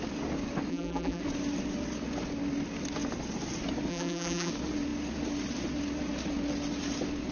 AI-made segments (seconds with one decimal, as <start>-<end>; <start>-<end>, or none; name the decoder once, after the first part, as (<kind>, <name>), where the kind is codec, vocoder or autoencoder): 0.7-1.2 (vocoder, BigVGAN v2); 3.9-4.5